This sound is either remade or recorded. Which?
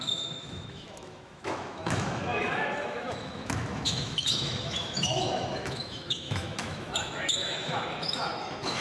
remade